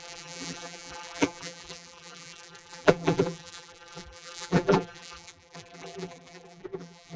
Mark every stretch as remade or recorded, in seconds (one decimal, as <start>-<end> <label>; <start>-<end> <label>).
0.0-7.2 remade

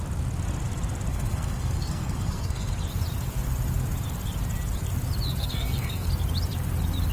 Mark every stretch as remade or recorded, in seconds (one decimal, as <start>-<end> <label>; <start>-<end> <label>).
0.0-1.1 recorded; 1.1-2.7 remade; 2.7-5.4 recorded; 5.4-6.1 remade; 6.1-7.1 recorded